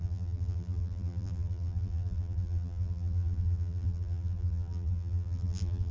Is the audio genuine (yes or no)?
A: no